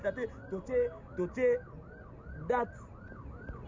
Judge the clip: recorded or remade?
recorded